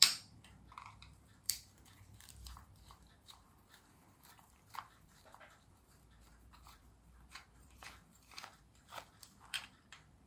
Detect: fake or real fake